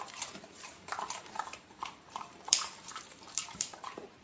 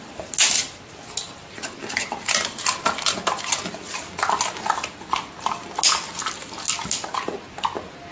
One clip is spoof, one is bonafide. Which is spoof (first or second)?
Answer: first